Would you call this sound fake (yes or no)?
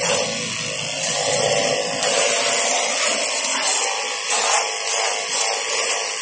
no